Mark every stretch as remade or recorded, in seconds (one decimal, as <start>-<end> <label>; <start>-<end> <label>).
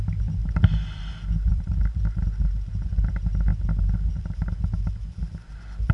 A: 0.0-0.4 recorded; 0.4-1.1 remade; 1.1-1.5 recorded; 1.5-2.9 remade; 2.9-5.9 recorded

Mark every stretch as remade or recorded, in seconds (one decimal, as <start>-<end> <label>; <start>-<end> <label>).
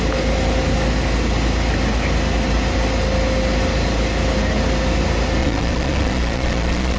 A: 0.0-5.4 recorded; 5.4-7.0 remade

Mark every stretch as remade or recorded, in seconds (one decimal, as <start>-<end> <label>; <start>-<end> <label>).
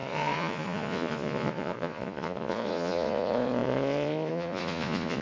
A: 0.0-5.2 remade